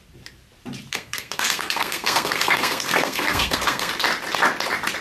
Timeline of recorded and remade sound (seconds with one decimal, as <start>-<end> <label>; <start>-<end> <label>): 0.0-0.9 recorded; 0.9-3.9 remade; 3.9-5.0 recorded